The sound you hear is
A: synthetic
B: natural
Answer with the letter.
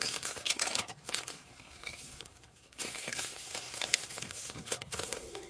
A